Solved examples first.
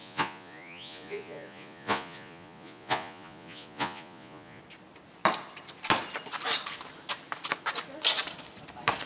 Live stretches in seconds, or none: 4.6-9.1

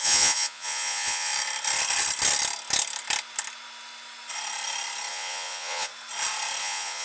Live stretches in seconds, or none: 1.3-5.1; 5.9-6.6

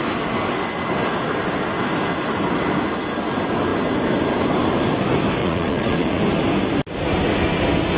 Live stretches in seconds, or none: 0.0-5.4; 6.2-8.0